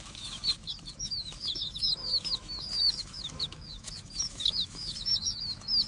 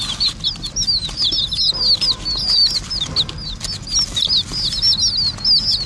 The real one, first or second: second